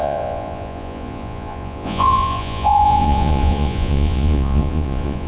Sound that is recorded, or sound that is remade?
remade